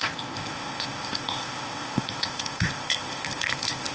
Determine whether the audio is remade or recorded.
remade